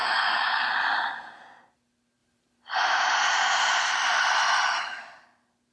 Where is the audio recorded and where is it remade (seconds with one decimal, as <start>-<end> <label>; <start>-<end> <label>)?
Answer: 0.0-0.6 remade; 0.6-5.7 recorded